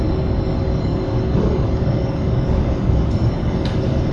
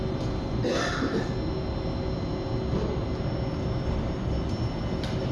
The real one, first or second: second